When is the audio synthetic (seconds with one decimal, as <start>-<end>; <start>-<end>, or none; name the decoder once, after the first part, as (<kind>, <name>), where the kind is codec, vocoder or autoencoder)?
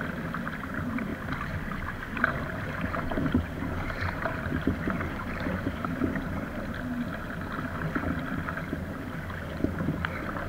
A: 2.5-6.5 (vocoder, BigVGAN v2)